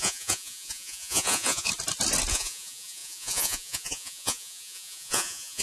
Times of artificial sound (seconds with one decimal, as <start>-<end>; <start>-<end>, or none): 0.0-1.7; 2.3-5.6